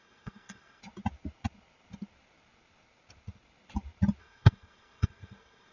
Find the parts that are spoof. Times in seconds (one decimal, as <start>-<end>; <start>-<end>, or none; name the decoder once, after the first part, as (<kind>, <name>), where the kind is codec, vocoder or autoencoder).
0.0-0.8 (codec, SNAC); 4.2-5.7